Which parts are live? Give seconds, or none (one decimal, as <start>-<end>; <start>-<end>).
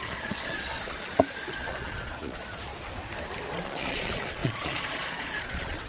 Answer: 2.7-3.6